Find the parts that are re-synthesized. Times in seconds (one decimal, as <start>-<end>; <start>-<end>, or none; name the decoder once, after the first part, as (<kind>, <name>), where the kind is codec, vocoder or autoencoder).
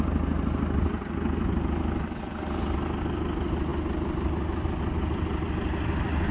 none